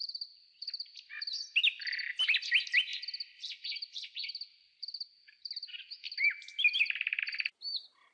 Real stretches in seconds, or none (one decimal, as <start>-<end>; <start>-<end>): 0.0-8.1